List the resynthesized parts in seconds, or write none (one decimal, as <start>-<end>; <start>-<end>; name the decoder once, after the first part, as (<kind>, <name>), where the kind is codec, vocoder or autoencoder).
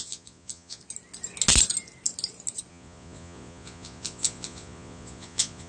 0.0-0.8 (vocoder, Vocos); 2.7-5.7